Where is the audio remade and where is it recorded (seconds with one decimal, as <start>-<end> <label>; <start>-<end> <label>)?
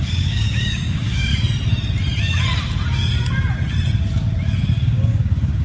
0.0-1.3 remade; 1.3-4.7 recorded; 4.7-5.6 remade